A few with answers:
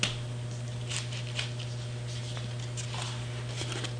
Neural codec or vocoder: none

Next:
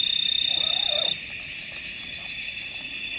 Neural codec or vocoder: none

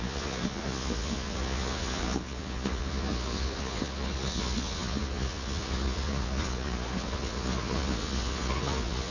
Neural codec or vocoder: vocoder, Vocos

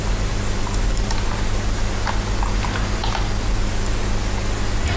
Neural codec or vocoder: none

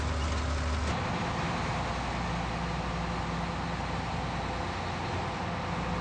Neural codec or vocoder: none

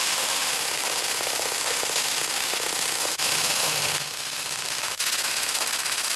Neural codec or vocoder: autoencoder, DAC-VAE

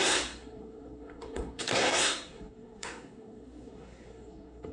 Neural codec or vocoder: codec, SNAC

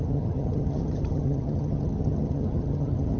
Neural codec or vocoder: vocoder, HiFi-GAN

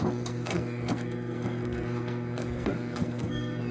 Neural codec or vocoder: codec, SNAC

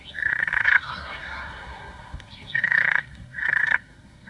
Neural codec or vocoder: codec, SNAC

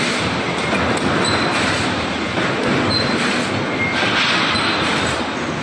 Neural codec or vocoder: none